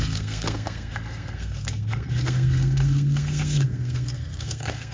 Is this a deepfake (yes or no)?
yes